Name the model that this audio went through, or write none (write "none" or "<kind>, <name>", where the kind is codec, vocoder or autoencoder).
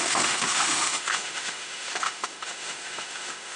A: autoencoder, DAC-VAE